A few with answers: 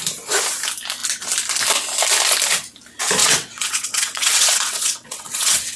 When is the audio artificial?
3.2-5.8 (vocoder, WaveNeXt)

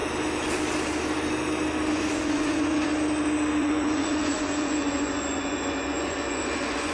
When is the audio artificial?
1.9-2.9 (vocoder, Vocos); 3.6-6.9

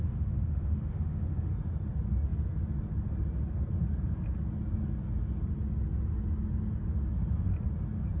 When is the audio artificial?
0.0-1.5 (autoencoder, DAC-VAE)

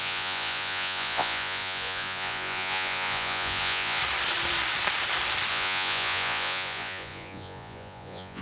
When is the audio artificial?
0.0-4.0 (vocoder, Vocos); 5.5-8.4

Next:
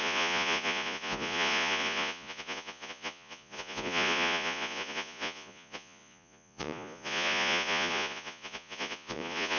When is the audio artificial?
0.0-9.6 (vocoder, Vocos)